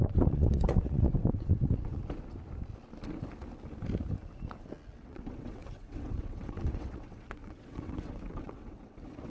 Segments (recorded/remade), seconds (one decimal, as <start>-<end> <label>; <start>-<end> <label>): 0.0-2.0 remade; 2.0-5.0 recorded; 5.0-9.3 remade